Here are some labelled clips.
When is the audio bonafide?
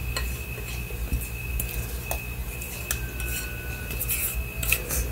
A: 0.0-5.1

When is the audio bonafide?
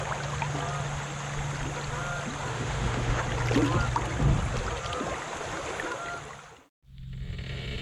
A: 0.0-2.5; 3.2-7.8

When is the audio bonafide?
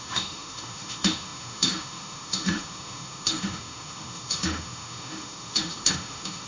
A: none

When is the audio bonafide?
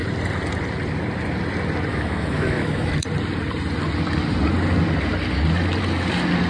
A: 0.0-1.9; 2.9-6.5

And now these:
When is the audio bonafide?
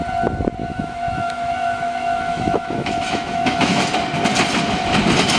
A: 0.0-0.6; 3.8-5.4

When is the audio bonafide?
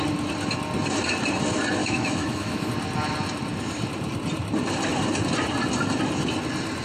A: 0.0-1.8; 2.7-6.8